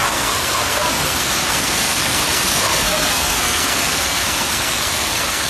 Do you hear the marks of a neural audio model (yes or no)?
yes